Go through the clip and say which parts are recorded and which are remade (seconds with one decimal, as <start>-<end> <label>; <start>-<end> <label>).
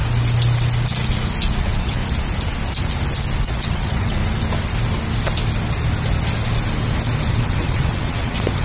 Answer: 0.0-1.5 recorded; 1.5-2.0 remade; 2.0-3.4 recorded; 3.4-4.2 remade; 4.2-7.3 recorded; 7.3-8.6 remade